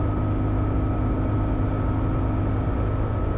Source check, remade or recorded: recorded